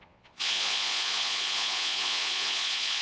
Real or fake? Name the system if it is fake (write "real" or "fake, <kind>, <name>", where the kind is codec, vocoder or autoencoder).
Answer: fake, vocoder, Vocos